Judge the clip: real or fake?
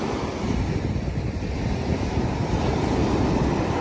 real